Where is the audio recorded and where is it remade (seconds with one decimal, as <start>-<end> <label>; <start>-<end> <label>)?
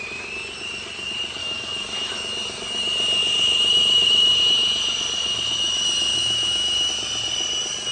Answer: 0.0-1.4 recorded; 1.4-2.1 remade; 2.1-6.1 recorded; 6.1-6.9 remade; 6.9-7.9 recorded